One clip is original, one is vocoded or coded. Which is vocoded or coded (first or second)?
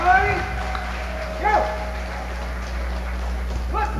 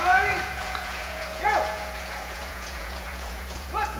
second